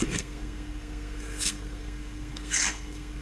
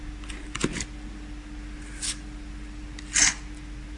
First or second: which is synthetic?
first